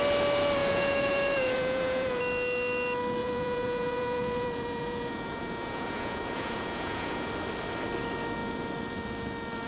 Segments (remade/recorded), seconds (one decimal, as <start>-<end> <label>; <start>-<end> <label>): 0.0-0.6 recorded; 0.6-2.2 remade; 2.2-3.2 recorded; 3.2-7.3 remade; 7.3-9.7 recorded

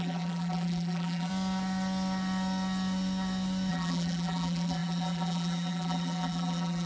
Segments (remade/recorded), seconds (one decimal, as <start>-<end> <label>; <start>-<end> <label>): 0.0-1.3 remade; 1.3-3.7 recorded; 3.7-6.9 remade

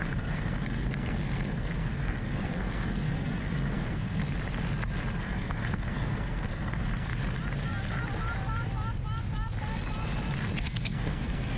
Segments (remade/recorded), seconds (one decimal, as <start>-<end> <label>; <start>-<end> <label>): 0.0-4.2 remade; 4.2-5.2 recorded; 5.2-7.1 remade; 7.1-10.6 recorded; 10.6-11.6 remade